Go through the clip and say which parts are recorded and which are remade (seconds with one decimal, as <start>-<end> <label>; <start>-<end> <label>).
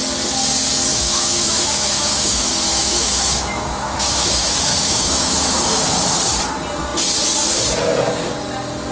0.0-0.9 recorded; 0.9-5.6 remade; 5.6-8.9 recorded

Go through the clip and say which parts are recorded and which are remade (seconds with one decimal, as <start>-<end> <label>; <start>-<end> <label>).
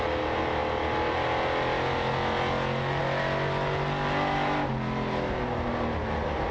0.0-6.5 recorded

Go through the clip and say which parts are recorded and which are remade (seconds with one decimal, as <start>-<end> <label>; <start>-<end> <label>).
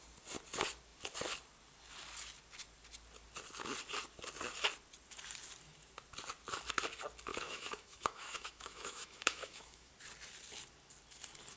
0.0-7.3 recorded; 7.3-9.9 remade; 9.9-11.6 recorded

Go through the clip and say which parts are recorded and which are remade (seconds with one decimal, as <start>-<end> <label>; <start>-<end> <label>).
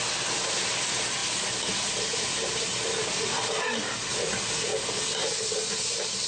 0.0-6.3 recorded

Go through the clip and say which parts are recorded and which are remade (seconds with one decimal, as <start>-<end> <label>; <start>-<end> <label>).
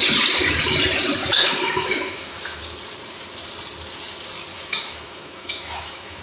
0.0-1.2 recorded; 1.2-2.6 remade; 2.6-4.5 recorded; 4.5-6.2 remade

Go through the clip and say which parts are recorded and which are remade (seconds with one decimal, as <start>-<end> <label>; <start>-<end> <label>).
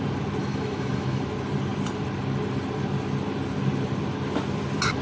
0.0-0.4 recorded; 0.4-1.2 remade; 1.2-5.0 recorded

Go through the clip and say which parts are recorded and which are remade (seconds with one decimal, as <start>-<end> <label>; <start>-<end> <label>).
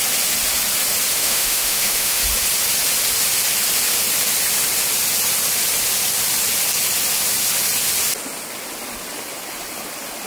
0.0-1.1 recorded; 1.1-2.2 remade; 2.2-10.3 recorded